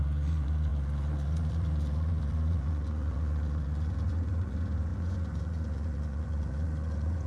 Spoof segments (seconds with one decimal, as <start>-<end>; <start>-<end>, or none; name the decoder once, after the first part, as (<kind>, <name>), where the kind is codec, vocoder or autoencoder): 0.0-7.3 (vocoder, Vocos)